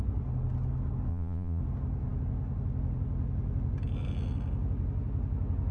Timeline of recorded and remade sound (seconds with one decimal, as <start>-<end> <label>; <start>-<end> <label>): 0.0-1.1 recorded; 1.1-1.6 remade; 1.6-5.7 recorded